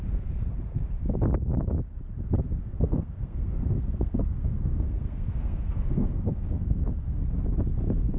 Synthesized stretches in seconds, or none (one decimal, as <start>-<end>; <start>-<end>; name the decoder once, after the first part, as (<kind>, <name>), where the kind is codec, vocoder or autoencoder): 2.6-7.2 (codec, SNAC)